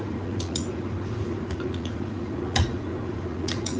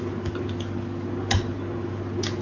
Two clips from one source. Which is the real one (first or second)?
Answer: second